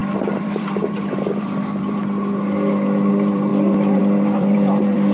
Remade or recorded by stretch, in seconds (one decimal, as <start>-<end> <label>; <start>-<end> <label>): 0.0-2.0 remade; 2.0-3.1 recorded; 3.1-5.1 remade